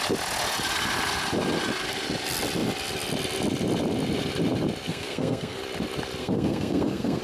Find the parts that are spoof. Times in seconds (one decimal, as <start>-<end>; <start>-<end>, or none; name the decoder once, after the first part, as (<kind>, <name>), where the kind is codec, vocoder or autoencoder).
4.9-5.6 (codec, SNAC); 6.2-7.2